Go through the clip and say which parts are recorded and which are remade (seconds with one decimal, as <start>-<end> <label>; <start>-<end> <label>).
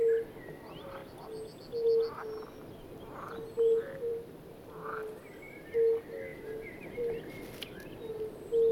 0.0-6.3 recorded; 6.3-7.2 remade; 7.2-8.7 recorded